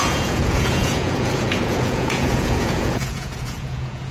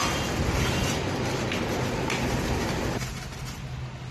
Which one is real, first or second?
second